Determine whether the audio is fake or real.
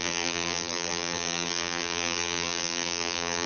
fake